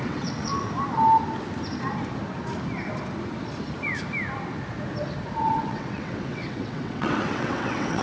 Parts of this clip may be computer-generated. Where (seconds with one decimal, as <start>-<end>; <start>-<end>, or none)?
0.0-0.5; 5.3-8.0